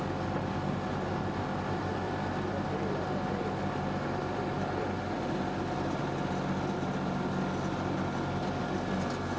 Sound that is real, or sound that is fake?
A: real